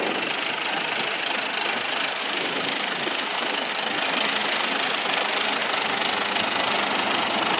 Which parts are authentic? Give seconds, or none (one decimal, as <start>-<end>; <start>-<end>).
0.0-2.2; 3.7-7.6